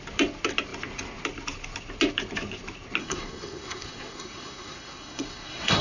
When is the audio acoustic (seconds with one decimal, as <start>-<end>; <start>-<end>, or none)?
0.0-3.0